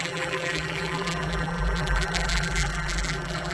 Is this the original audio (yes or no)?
no